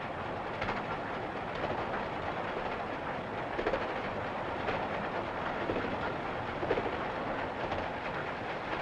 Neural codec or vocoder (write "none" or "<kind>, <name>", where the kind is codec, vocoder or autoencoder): none